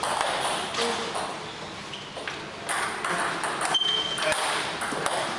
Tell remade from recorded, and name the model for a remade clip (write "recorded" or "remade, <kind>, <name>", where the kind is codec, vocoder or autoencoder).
recorded